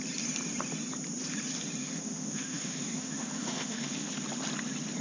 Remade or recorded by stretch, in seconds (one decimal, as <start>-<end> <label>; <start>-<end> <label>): 0.0-1.8 recorded; 1.8-4.1 remade; 4.1-5.0 recorded